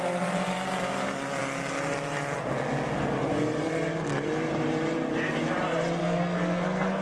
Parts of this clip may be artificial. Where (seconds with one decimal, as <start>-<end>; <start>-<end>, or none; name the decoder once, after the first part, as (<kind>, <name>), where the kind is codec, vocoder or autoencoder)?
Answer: 6.0-7.0 (codec, SNAC)

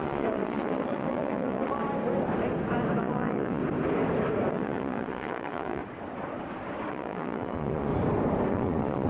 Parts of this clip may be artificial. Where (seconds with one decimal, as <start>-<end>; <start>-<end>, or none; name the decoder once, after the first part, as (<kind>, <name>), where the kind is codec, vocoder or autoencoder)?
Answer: 0.0-1.8 (vocoder, Vocos); 3.0-3.6; 4.5-5.8; 6.9-7.9; 8.5-9.1

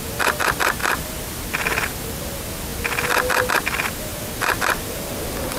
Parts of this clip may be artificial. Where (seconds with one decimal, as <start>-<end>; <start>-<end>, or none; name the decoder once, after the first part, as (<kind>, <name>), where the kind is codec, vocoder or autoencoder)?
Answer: 0.8-1.5 (vocoder, BigVGAN v2); 4.1-5.0

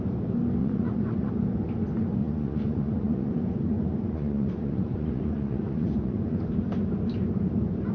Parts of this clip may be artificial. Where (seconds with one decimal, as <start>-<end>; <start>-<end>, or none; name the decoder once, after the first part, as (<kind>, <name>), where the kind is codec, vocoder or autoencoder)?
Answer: 0.6-1.3 (vocoder, Vocos); 2.2-6.4

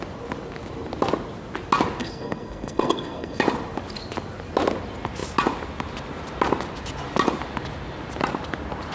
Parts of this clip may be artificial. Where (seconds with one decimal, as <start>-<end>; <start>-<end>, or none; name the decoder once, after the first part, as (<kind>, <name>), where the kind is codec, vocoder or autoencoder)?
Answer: 2.0-3.4 (codec, SNAC)

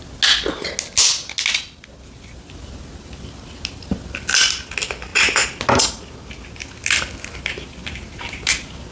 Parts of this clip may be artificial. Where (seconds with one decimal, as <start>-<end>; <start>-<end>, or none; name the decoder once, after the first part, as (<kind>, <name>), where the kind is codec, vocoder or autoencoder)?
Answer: none